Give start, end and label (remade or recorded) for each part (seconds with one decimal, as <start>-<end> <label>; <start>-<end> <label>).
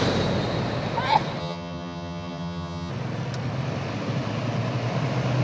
0.0-1.4 recorded; 1.4-2.9 remade; 2.9-5.4 recorded